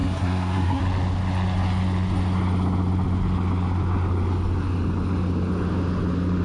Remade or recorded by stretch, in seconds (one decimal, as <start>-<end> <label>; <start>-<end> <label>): 0.0-0.8 remade; 0.8-6.4 recorded